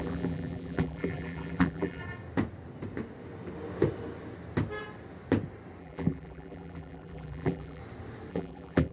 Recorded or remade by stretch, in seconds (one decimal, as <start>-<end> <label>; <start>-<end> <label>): 0.0-2.0 remade; 2.0-5.8 recorded; 5.8-7.8 remade; 7.8-8.3 recorded; 8.3-8.9 remade

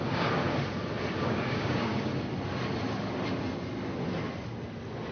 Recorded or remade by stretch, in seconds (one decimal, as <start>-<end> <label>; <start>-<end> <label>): 0.0-0.4 remade; 0.4-1.2 recorded; 1.2-2.1 remade; 2.1-5.1 recorded